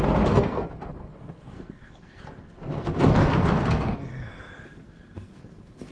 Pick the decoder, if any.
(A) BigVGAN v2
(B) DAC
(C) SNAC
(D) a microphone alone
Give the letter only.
C